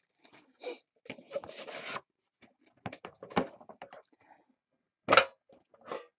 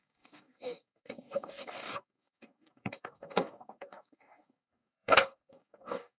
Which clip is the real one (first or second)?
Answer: first